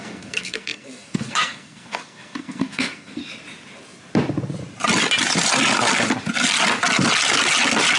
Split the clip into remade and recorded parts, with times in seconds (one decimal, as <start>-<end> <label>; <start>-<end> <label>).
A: 0.0-3.2 remade; 3.2-8.0 recorded